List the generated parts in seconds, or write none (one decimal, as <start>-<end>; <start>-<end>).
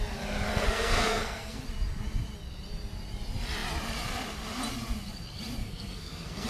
0.5-1.6; 5.6-6.5